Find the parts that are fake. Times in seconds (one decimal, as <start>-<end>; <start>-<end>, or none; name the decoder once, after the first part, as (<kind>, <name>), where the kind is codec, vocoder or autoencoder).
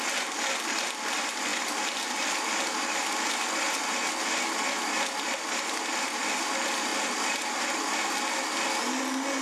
none